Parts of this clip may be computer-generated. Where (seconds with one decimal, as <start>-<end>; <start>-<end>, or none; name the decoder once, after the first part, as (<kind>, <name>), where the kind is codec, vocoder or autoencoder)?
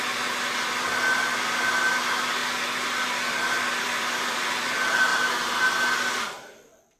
none